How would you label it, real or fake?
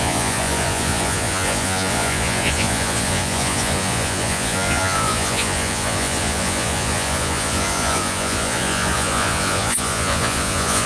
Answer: fake